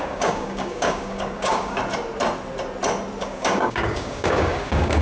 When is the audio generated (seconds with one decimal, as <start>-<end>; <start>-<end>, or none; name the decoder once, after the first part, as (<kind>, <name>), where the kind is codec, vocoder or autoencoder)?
0.0-1.8 (codec, DAC); 3.2-5.0